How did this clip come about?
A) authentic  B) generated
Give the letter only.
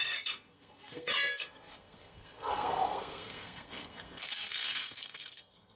B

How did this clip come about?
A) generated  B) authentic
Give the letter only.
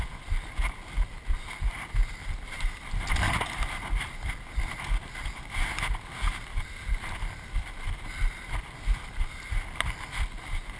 B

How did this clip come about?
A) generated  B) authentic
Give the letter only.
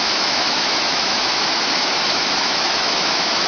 A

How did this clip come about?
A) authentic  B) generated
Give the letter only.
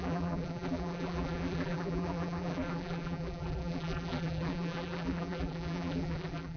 B